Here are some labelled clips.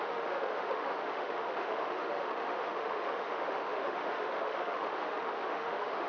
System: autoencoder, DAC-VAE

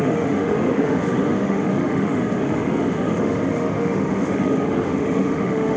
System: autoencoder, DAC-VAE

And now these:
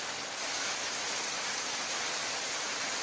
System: none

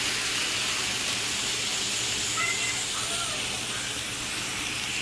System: none